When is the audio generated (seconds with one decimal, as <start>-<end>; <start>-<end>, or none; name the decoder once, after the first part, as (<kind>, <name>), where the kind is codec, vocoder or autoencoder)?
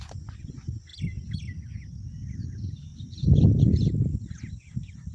none